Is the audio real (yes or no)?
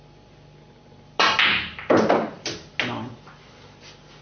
yes